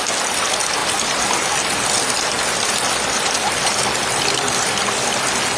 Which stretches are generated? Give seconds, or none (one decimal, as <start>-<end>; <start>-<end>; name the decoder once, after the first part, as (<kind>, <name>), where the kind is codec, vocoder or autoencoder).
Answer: 0.8-4.2 (vocoder, BigVGAN v2)